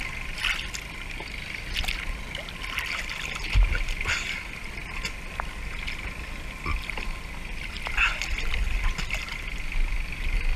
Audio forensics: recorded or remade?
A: recorded